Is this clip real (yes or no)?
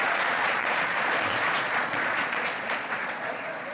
no